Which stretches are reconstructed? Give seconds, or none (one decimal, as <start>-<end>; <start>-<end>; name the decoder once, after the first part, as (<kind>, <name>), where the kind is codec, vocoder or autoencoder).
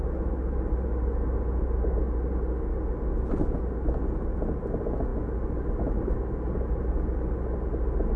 none